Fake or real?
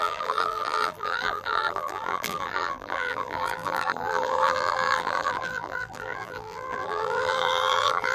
fake